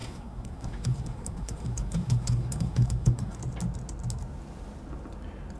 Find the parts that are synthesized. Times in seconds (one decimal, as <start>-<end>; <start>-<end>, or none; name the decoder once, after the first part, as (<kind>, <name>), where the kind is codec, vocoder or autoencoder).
0.0-3.4 (codec, SNAC)